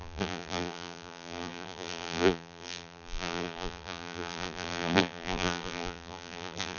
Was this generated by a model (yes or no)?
yes